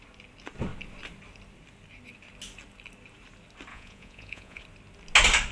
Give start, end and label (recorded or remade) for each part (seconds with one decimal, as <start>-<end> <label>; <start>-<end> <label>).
0.0-3.7 recorded; 3.7-4.6 remade; 4.6-5.5 recorded

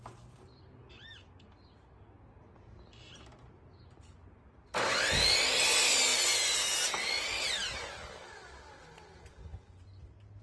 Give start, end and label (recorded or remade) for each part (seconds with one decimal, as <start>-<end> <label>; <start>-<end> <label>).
0.0-10.4 recorded

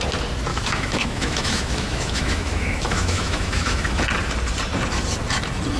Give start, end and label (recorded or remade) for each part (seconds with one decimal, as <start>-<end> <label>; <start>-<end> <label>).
0.0-0.5 recorded; 0.5-4.0 remade; 4.0-5.8 recorded

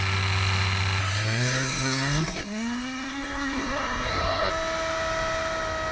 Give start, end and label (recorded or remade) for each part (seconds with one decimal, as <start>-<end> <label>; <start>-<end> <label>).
0.0-1.0 recorded; 1.0-4.5 remade; 4.5-5.9 recorded